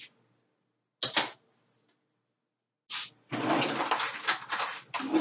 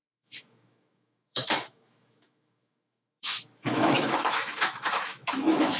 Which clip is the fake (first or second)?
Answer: second